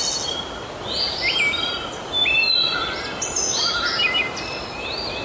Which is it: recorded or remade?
recorded